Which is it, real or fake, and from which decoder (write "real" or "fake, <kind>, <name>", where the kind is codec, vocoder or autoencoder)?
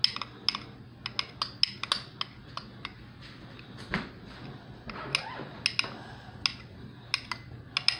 real